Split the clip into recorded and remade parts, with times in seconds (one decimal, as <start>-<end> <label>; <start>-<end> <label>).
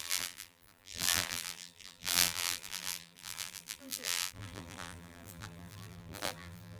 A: 0.0-6.8 remade